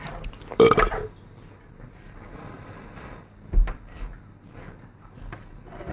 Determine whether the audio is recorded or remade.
recorded